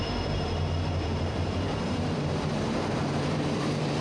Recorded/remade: remade